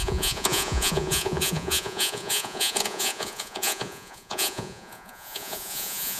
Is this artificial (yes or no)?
yes